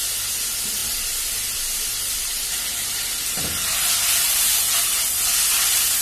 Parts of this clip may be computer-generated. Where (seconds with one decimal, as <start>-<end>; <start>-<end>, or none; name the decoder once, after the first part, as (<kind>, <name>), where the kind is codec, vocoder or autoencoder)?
none